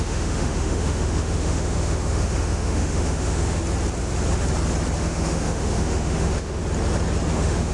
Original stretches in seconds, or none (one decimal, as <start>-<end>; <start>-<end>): 3.6-5.0; 6.6-7.3